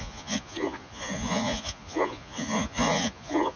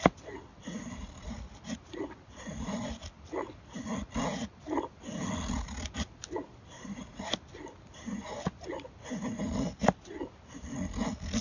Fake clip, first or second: first